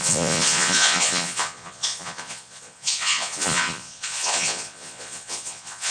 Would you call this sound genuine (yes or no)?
no